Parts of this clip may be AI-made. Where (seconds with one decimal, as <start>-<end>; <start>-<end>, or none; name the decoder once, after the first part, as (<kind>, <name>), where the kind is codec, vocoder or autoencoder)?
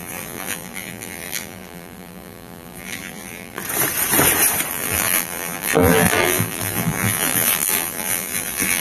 0.0-3.6 (vocoder, BigVGAN v2); 4.7-8.8